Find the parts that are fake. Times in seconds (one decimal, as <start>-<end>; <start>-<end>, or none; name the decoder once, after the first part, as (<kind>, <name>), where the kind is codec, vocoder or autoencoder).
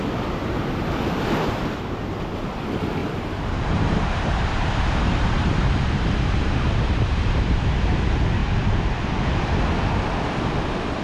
3.0-8.0 (vocoder, BigVGAN v2); 8.4-8.9